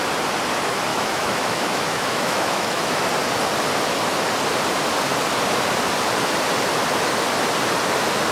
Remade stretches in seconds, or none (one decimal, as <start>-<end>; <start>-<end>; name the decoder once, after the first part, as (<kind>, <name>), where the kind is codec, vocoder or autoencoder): 0.9-3.0 (autoencoder, DAC-VAE)